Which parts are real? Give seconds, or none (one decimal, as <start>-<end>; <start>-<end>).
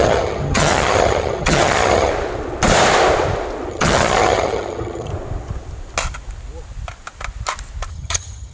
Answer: 2.1-3.7; 5.1-7.9